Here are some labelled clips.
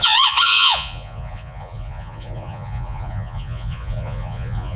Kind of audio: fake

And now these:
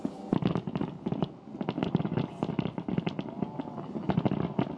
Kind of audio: real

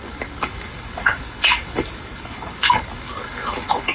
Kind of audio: fake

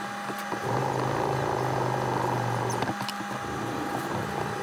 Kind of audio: real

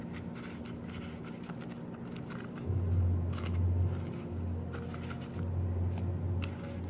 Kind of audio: real